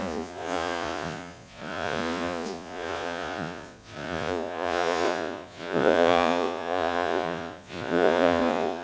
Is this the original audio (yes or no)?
no